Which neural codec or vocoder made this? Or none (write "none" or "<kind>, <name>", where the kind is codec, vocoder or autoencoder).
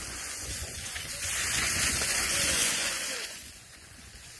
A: vocoder, Vocos